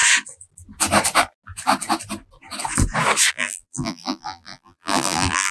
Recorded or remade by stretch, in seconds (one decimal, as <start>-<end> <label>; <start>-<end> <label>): 0.0-3.3 recorded; 3.3-5.5 remade